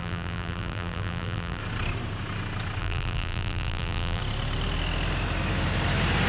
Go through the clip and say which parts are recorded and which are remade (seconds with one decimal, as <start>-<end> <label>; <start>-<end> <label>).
0.0-1.6 remade; 1.6-2.8 recorded; 2.8-4.2 remade; 4.2-6.3 recorded